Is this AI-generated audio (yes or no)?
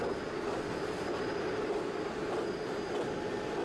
no